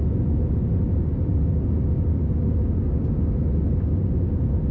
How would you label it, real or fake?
real